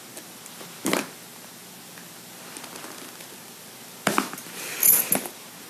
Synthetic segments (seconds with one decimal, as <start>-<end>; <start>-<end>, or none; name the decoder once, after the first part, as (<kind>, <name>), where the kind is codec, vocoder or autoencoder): none